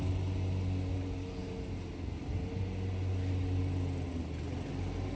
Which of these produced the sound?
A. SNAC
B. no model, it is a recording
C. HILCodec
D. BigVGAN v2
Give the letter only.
B